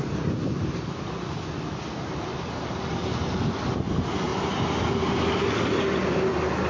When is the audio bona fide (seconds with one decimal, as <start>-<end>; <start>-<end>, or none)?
0.0-6.7